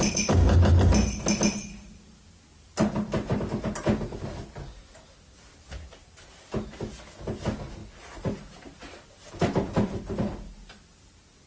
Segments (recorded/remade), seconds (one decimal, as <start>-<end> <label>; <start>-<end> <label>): 0.0-11.5 recorded